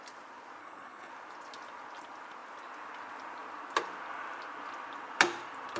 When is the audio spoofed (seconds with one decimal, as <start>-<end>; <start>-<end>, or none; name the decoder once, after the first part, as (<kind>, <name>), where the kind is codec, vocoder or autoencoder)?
0.6-1.1 (codec, HILCodec)